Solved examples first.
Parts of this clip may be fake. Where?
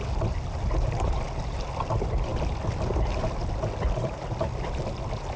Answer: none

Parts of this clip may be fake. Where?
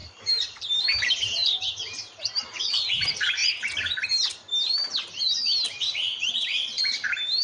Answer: 0.0-1.4 (vocoder, BigVGAN v2); 2.2-3.4; 5.9-7.4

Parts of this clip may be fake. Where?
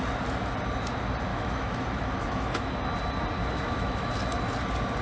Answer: 1.3-2.7 (autoencoder, DAC-VAE); 3.4-4.1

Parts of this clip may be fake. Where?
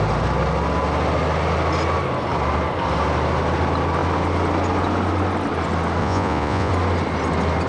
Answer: 6.0-6.7 (vocoder, Vocos)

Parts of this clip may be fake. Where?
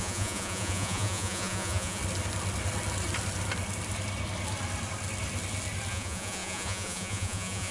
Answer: 0.0-2.0 (vocoder, Vocos); 5.9-7.7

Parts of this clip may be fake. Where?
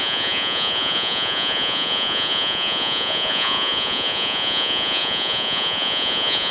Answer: 0.0-6.5 (vocoder, Vocos)